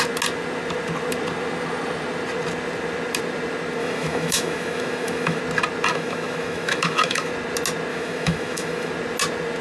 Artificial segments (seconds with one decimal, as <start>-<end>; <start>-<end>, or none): 3.8-5.4; 5.9-7.3; 7.9-8.9